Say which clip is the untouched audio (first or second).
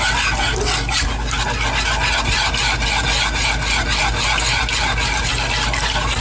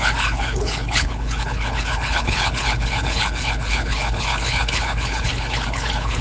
first